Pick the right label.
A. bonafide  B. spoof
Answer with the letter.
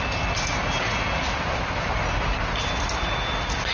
A